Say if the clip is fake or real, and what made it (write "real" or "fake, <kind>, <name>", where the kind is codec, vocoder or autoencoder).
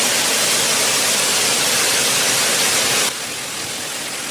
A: real